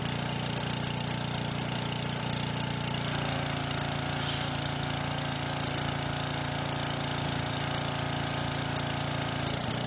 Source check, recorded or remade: recorded